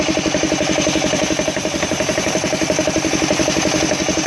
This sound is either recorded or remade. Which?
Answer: recorded